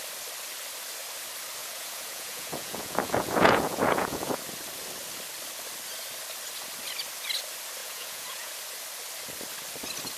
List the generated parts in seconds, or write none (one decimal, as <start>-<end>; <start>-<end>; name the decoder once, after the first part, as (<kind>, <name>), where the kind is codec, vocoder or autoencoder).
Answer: 1.6-4.4 (vocoder, Vocos); 7.8-8.5